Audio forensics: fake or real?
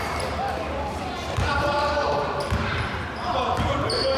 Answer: fake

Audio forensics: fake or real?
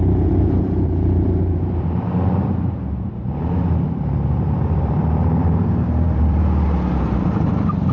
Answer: fake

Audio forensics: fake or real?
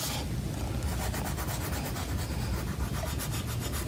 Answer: real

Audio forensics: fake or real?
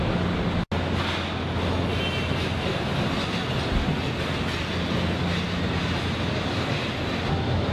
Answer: real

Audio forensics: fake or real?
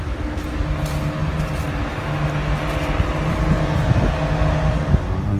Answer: real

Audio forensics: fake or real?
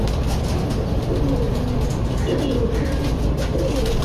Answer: real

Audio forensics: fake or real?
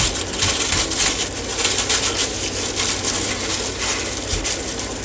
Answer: fake